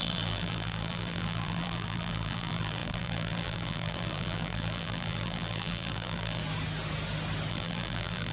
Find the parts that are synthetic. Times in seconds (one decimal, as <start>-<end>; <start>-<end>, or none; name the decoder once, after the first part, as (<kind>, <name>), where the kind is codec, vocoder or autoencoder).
0.0-6.4 (vocoder, BigVGAN v2); 7.5-8.3